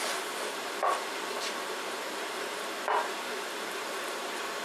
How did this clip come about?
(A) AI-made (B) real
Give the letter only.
A